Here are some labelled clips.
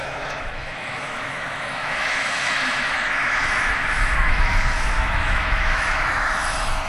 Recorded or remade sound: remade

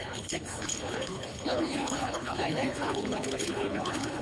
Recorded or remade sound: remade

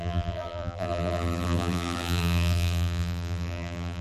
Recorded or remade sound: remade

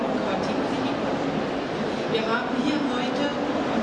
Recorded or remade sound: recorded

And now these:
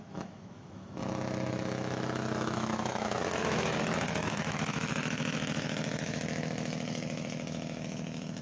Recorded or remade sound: remade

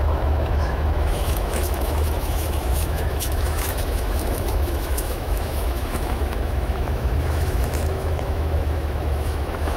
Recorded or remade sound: remade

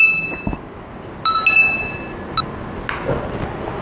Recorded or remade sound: recorded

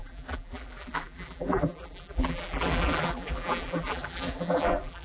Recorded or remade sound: remade